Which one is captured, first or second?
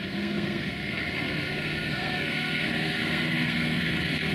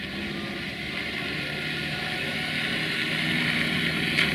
second